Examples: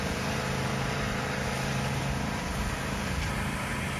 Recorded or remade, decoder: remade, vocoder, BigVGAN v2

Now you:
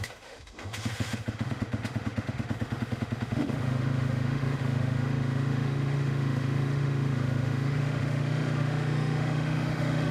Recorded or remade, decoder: remade, autoencoder, DAC-VAE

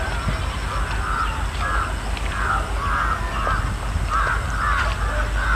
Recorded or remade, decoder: recorded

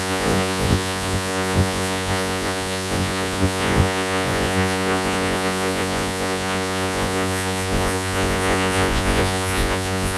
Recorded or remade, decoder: remade, vocoder, Vocos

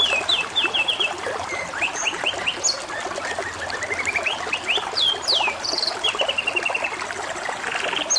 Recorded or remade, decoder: recorded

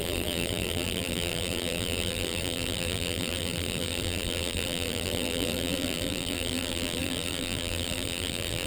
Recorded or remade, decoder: remade, vocoder, BigVGAN v2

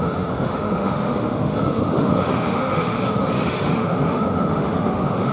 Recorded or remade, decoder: remade, autoencoder, DAC-VAE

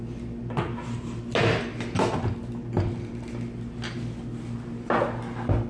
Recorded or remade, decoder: recorded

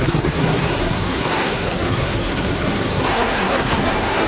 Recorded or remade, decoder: remade, codec, SNAC